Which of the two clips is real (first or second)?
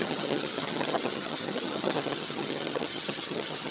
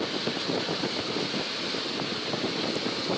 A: second